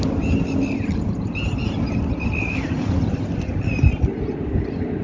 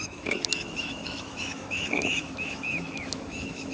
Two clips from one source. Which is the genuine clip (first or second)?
first